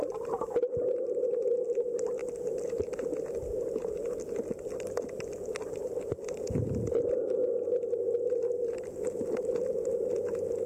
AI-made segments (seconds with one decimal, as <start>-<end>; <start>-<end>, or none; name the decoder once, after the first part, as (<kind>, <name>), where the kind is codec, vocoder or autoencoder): none